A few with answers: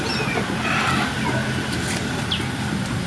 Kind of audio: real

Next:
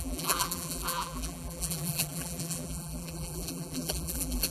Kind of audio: fake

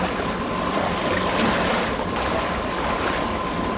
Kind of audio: fake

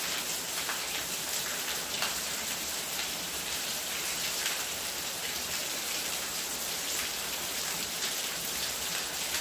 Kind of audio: fake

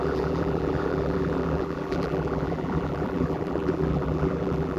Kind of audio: fake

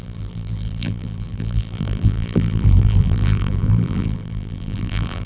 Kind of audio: fake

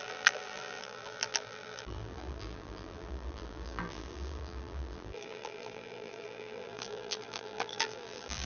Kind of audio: fake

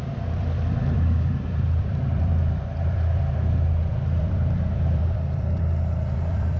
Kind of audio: fake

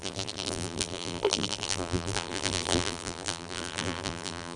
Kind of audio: fake